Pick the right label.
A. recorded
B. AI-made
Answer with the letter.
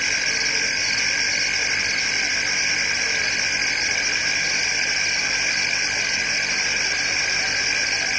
A